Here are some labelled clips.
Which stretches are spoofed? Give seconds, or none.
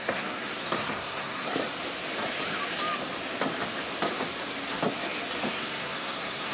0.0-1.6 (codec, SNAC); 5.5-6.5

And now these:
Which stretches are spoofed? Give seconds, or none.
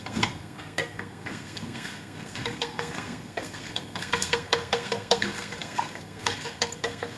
0.0-7.2 (codec, SNAC)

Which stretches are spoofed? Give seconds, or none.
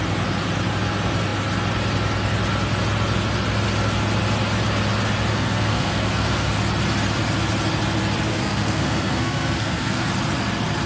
5.3-6.5 (codec, SNAC); 8.3-10.1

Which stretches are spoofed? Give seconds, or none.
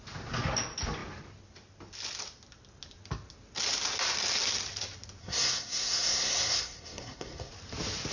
5.2-7.5 (codec, SNAC)